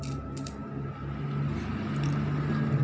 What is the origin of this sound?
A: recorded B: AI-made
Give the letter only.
A